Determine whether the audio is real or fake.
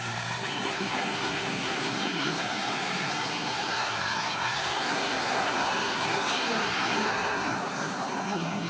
fake